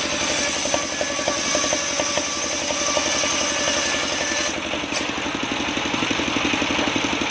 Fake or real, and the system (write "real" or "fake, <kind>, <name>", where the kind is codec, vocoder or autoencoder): real